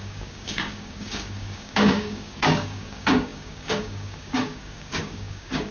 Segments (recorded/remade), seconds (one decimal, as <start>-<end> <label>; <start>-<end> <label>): 0.0-5.7 remade